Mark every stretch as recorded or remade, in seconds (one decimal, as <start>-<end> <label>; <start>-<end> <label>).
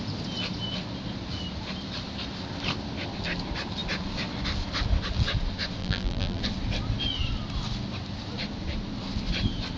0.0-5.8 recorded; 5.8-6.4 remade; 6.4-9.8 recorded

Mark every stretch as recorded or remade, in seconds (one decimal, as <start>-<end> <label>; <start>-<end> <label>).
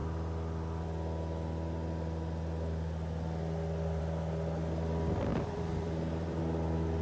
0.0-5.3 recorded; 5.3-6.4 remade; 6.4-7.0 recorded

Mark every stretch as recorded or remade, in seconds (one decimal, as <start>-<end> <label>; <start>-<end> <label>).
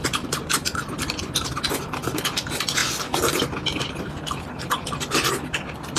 0.0-6.0 recorded